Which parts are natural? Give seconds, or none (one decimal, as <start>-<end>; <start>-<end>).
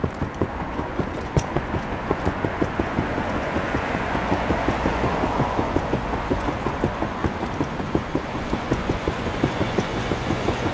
7.2-7.8